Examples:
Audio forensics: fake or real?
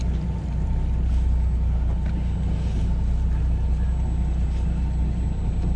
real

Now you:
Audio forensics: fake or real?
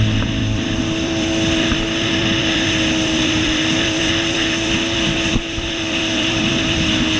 fake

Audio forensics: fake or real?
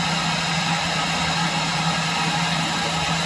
real